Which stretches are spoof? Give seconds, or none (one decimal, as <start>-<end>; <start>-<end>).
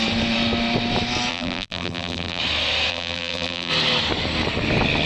1.3-2.4; 2.9-3.7